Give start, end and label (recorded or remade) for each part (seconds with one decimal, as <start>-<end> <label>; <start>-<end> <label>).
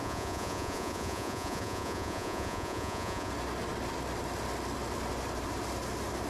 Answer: 0.0-3.3 remade; 3.3-6.3 recorded